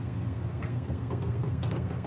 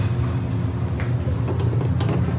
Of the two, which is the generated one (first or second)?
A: first